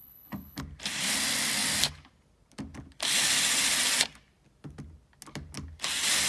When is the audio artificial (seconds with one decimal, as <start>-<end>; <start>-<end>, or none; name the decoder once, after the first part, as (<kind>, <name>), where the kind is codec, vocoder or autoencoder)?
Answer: 0.0-0.6 (codec, HILCodec)